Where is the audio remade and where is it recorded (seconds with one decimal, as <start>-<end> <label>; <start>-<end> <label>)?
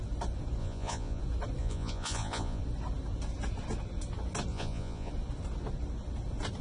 0.0-0.6 recorded; 0.6-1.2 remade; 1.2-1.6 recorded; 1.6-2.6 remade; 2.6-4.5 recorded; 4.5-5.1 remade; 5.1-6.6 recorded